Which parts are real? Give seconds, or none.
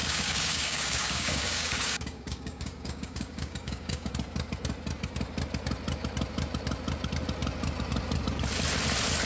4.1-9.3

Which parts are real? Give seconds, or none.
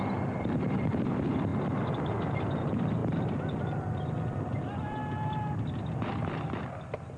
1.5-2.5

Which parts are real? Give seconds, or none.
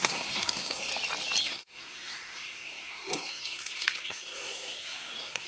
0.9-1.4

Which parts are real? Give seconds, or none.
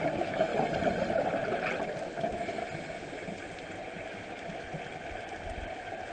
0.5-2.0; 2.6-4.1; 4.7-6.1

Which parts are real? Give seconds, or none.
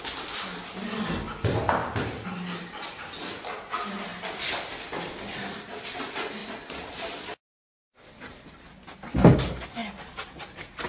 0.0-1.8; 3.0-4.1; 6.0-6.4; 7.7-10.9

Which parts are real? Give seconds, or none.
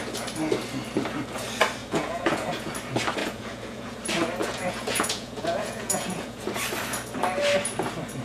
0.0-1.8; 2.7-3.2; 4.0-4.4; 6.5-8.2